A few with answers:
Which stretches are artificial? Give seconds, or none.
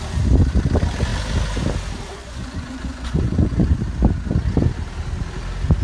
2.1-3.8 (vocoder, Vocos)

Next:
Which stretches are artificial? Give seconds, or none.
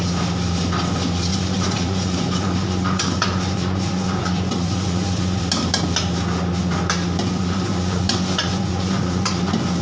1.3-5.4 (vocoder, Vocos); 7.2-9.4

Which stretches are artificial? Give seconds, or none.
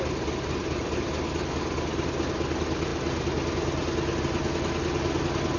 none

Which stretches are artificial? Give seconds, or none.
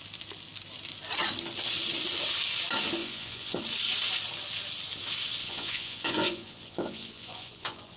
3.0-3.6 (vocoder, Vocos); 5.4-8.0